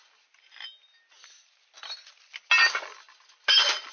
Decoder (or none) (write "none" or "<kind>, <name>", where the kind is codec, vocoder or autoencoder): none